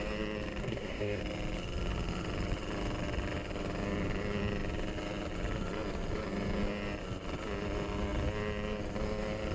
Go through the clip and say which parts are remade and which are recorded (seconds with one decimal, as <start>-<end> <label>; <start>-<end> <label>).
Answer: 0.0-0.6 recorded; 0.6-1.2 remade; 1.2-9.5 recorded